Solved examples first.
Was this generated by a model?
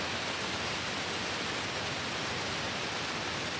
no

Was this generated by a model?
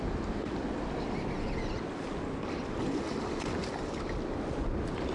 no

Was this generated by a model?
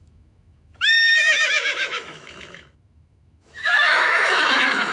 yes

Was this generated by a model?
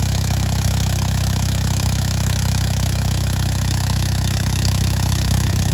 yes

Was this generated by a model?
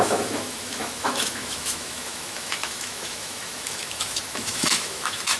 yes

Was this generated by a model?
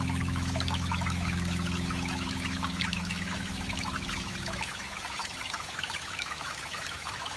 yes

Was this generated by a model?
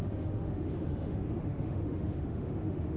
yes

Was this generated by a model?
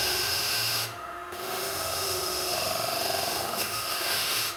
yes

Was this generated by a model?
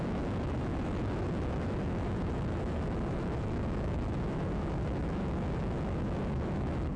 yes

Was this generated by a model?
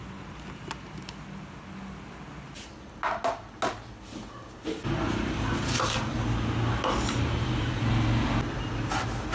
no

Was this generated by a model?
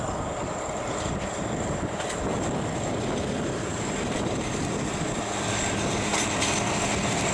no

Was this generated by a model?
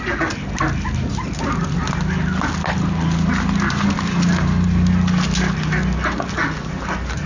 no